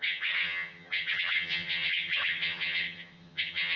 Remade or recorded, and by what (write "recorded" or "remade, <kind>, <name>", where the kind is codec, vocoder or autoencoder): remade, vocoder, HiFi-GAN